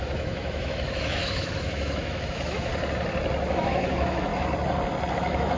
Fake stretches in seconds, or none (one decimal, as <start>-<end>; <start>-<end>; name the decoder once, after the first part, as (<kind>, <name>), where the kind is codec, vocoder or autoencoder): 0.0-2.7 (autoencoder, DAC-VAE); 3.5-4.3; 5.1-5.6